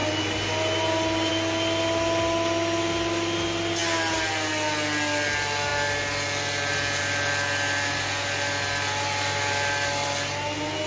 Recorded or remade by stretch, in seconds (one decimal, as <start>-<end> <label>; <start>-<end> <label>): 0.0-10.9 recorded